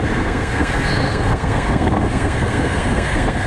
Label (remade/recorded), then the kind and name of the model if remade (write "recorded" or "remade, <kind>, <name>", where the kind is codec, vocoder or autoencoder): remade, codec, SNAC